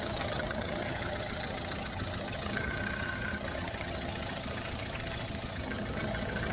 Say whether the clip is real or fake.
fake